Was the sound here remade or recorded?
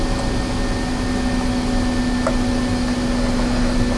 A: recorded